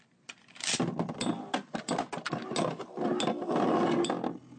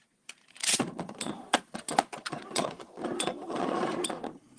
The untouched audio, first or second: first